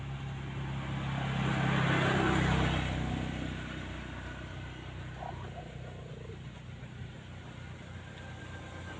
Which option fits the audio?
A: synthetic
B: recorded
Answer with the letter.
B